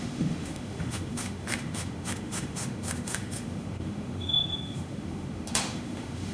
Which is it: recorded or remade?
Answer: remade